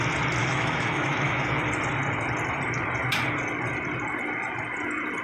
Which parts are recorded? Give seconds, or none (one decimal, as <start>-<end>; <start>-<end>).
0.0-0.4; 1.6-5.2